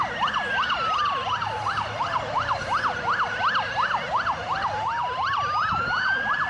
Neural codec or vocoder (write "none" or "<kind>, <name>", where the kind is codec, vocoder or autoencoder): none